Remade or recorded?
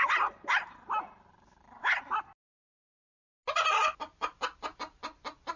recorded